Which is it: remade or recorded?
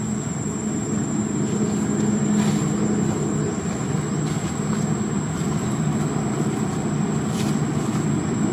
recorded